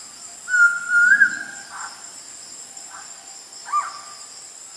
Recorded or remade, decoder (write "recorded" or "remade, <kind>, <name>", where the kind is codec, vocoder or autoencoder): recorded